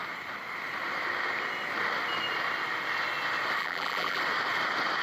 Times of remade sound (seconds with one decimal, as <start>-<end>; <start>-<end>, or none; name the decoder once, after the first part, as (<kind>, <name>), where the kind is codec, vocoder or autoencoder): 3.6-4.2 (vocoder, BigVGAN v2)